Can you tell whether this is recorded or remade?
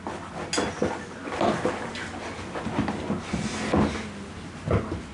recorded